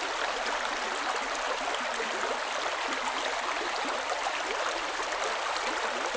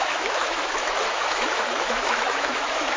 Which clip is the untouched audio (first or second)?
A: first